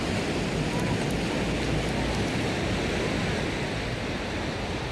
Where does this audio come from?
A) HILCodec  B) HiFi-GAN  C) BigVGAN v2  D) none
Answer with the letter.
D